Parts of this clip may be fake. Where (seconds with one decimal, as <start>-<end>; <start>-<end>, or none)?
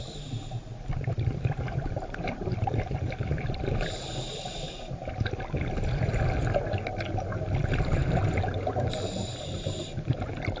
0.0-4.1; 8.0-10.6